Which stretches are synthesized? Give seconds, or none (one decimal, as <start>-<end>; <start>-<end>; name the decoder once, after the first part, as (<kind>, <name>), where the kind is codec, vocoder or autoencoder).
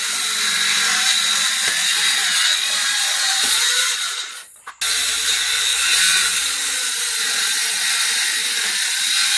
2.2-4.7 (vocoder, Vocos); 5.7-6.6